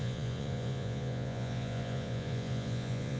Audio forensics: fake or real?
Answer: fake